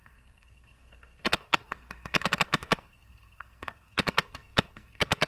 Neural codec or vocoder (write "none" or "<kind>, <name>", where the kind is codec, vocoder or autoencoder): codec, SNAC